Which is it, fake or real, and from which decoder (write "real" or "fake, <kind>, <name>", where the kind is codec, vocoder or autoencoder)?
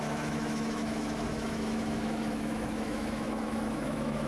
fake, autoencoder, DAC-VAE